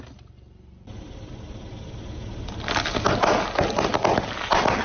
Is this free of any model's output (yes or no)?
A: yes